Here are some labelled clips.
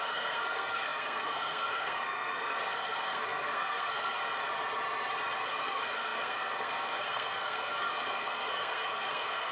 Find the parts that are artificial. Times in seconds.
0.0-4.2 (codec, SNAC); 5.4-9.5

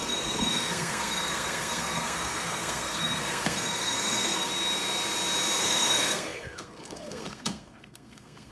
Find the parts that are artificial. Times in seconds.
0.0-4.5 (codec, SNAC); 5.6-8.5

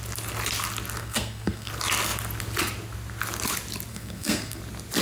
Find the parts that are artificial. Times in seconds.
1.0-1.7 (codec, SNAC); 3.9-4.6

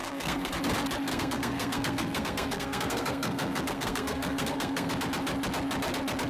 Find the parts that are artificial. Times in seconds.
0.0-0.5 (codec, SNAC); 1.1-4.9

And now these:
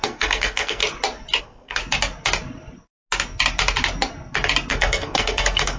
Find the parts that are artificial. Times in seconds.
0.0-0.8 (codec, SNAC); 1.4-1.8; 4.7-5.8

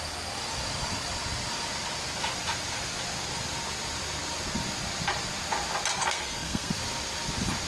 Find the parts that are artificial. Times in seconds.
5.9-6.7 (codec, SNAC)